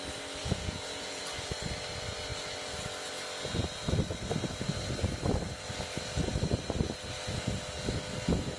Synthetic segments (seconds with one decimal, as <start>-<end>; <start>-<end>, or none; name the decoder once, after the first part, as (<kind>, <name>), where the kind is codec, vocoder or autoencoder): 0.4-1.2 (vocoder, Vocos)